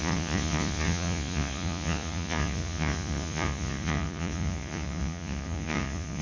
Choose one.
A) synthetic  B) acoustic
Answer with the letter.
A